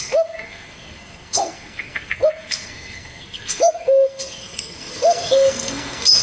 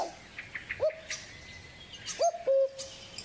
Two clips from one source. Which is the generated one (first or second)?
first